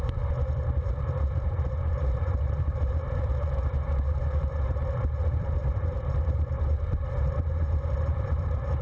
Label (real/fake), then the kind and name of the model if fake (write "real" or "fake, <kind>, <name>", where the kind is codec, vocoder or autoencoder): fake, vocoder, BigVGAN v2